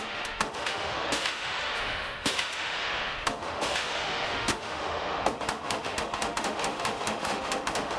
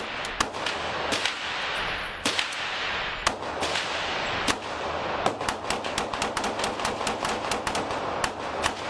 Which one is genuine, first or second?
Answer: second